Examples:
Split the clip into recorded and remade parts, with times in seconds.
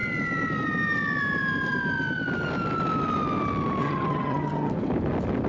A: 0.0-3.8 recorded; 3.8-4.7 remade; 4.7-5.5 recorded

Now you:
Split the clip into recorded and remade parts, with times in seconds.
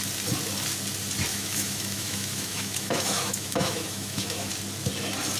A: 0.0-1.3 recorded; 1.3-4.5 remade; 4.5-5.4 recorded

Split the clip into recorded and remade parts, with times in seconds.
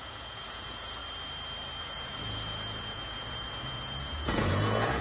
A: 0.0-1.0 remade; 1.0-1.8 recorded; 1.8-5.0 remade